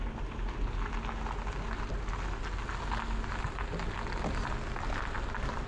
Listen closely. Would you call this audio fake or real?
real